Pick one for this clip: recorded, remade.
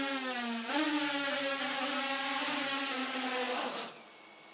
recorded